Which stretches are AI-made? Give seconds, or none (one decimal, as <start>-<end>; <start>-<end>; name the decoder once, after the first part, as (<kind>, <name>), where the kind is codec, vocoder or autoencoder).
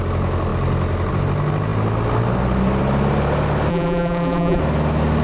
3.7-4.6 (vocoder, BigVGAN v2)